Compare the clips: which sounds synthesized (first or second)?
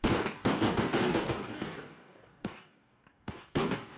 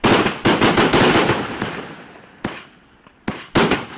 first